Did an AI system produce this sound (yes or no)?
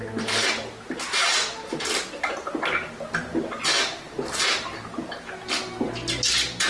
no